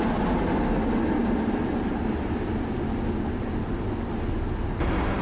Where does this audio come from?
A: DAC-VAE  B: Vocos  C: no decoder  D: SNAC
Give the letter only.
C